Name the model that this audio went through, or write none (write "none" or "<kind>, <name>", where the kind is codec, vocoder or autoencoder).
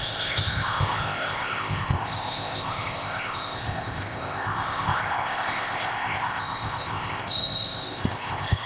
codec, ZipCodec